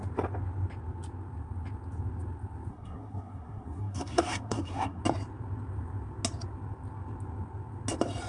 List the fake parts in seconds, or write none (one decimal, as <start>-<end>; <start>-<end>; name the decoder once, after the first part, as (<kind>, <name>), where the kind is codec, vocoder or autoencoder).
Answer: 2.7-5.0 (codec, SNAC)